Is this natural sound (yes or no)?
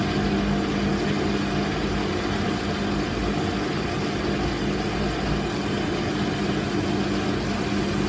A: yes